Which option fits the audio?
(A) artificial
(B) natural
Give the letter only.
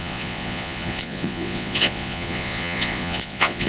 A